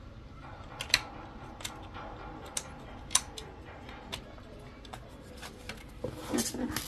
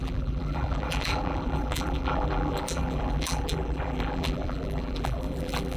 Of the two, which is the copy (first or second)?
second